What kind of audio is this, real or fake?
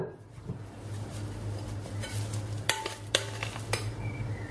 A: fake